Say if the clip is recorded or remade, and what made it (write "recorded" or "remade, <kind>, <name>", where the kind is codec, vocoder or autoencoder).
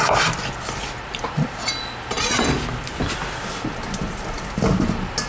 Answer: recorded